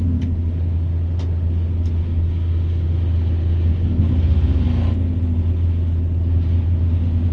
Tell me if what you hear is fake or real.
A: real